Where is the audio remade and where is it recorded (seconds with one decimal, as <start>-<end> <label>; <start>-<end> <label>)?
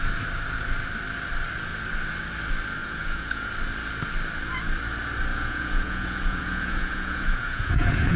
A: 0.0-2.8 recorded; 2.8-3.5 remade; 3.5-5.3 recorded; 5.3-8.2 remade